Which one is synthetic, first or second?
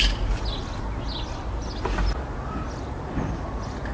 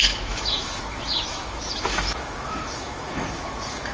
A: second